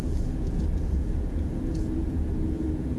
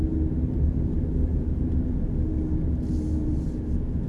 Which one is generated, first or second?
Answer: first